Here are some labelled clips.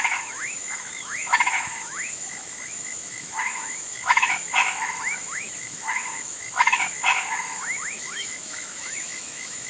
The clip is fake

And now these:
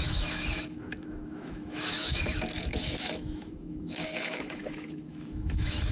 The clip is fake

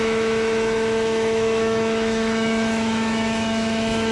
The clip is fake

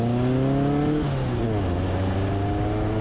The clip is real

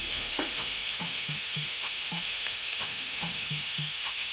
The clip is fake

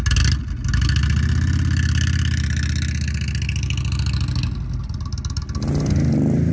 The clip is real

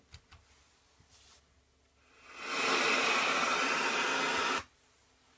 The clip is real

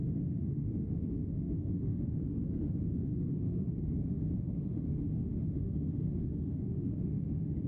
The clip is fake